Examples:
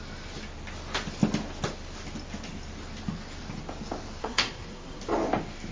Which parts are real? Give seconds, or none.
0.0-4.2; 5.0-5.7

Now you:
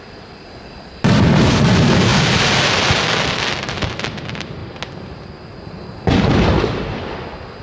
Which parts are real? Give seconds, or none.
0.0-7.6

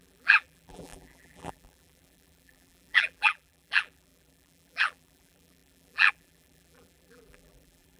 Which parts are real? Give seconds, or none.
none

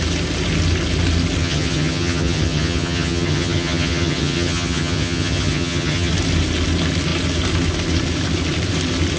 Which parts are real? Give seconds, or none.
0.0-1.4; 6.1-9.2

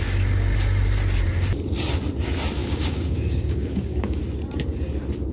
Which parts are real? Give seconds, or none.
0.0-2.6; 4.2-5.3